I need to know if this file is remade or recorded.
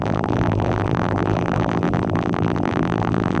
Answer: remade